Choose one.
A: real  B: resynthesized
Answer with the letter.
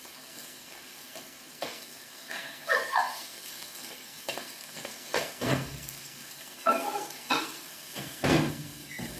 B